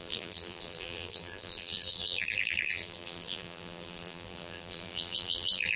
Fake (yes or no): yes